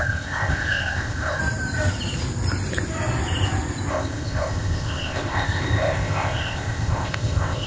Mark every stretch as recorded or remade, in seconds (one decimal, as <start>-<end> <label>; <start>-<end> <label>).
0.0-1.4 remade; 1.4-3.9 recorded; 3.9-7.7 remade